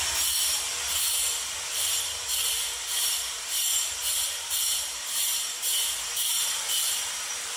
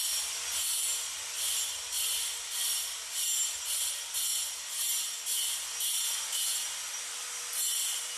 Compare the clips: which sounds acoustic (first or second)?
second